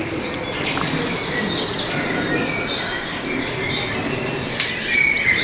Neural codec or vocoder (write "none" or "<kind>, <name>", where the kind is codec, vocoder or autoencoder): none